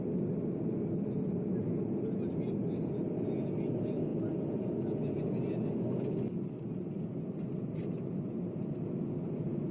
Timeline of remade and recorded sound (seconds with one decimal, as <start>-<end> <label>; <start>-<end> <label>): 0.0-9.7 recorded